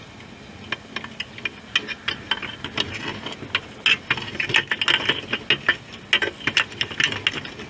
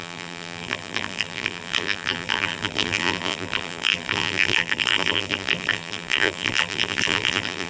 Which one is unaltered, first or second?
first